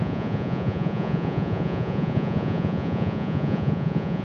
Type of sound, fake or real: fake